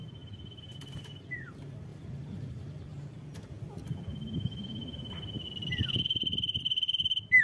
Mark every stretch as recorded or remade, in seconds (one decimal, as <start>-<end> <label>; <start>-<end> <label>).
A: 0.0-2.9 remade; 2.9-7.4 recorded